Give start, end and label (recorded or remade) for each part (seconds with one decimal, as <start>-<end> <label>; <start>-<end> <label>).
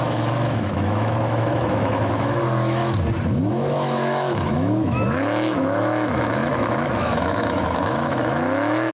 0.0-2.8 remade; 2.8-3.5 recorded; 3.5-8.9 remade